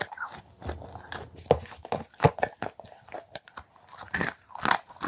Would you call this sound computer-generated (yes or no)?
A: no